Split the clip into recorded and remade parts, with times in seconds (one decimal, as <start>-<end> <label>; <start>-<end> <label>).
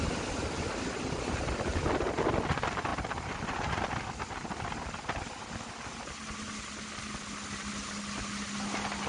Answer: 0.0-9.1 recorded